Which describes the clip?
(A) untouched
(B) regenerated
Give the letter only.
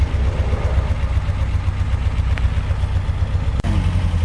A